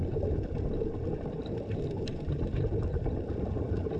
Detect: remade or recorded remade